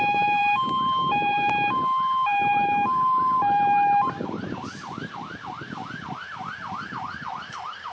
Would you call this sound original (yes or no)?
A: no